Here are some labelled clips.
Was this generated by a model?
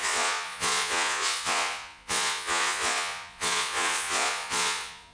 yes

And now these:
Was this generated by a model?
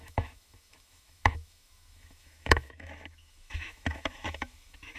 yes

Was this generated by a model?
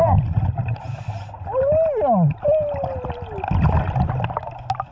no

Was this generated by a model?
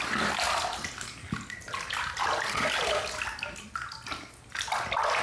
no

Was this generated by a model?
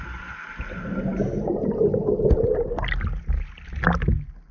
no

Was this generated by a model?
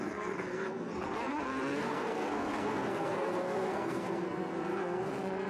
yes